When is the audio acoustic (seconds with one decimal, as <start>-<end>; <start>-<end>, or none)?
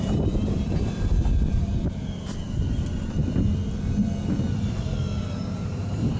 3.2-4.5